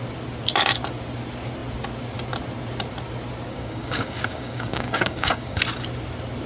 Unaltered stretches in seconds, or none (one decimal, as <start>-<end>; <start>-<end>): 0.0-3.5; 5.6-6.5